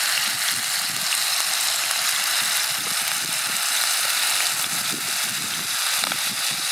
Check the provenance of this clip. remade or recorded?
recorded